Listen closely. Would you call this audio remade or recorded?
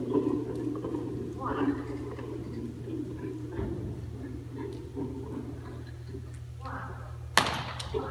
recorded